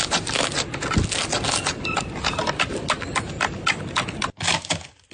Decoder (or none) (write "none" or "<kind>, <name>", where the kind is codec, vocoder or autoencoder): none